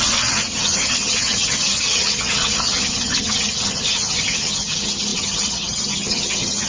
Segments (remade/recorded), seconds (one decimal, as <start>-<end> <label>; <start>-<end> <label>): 0.0-6.7 remade